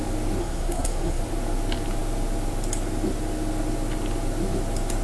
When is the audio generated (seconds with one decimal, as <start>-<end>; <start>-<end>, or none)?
0.4-1.2